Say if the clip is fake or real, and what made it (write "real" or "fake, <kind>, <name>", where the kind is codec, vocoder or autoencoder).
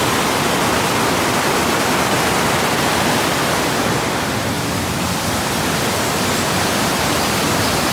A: real